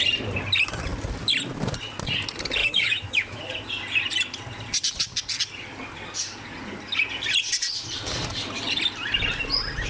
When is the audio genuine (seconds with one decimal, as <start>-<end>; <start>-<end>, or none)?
0.0-2.6; 3.4-9.9